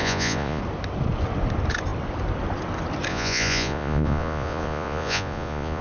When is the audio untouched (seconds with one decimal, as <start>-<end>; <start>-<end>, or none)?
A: 0.6-3.1